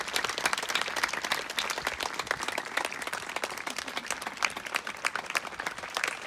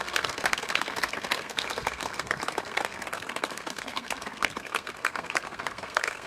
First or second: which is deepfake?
second